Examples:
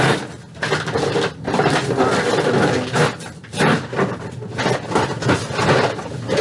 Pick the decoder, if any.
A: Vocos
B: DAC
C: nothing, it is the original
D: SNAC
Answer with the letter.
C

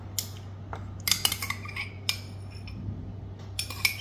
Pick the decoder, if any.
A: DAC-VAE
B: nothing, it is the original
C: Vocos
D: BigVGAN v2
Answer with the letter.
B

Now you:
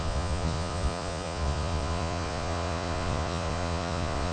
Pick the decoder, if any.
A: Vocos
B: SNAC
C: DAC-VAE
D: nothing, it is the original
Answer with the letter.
A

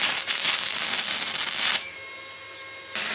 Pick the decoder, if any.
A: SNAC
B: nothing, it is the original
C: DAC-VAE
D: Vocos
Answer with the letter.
B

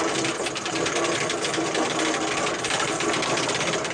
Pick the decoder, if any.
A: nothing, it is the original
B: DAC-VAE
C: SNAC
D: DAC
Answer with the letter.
A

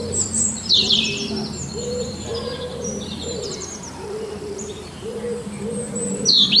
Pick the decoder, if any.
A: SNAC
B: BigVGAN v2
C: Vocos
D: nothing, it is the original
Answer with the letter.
B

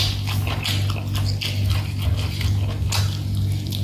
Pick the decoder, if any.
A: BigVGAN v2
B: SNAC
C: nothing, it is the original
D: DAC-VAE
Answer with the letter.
C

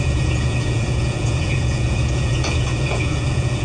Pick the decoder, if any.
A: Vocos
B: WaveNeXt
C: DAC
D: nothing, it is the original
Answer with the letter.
A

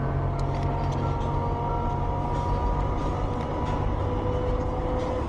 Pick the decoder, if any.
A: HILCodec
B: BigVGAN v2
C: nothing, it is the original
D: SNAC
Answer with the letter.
C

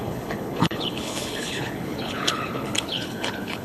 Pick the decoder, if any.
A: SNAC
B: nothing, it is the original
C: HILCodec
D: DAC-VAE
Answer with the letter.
C